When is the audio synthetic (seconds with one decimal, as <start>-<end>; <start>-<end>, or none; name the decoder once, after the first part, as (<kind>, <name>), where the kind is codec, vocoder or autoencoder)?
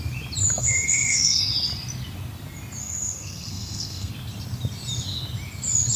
0.6-1.4 (codec, SNAC); 2.8-4.1